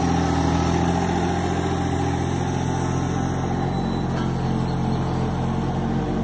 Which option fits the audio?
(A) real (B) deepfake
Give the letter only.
A